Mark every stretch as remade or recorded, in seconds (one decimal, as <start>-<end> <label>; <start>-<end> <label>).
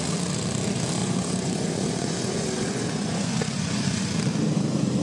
0.0-1.0 recorded; 1.0-4.0 remade; 4.0-5.0 recorded